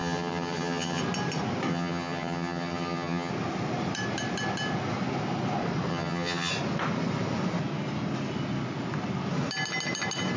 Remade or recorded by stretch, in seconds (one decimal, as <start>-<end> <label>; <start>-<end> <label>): 0.0-1.0 remade; 1.0-1.7 recorded; 1.7-3.3 remade; 3.3-5.9 recorded; 5.9-6.5 remade; 6.5-10.4 recorded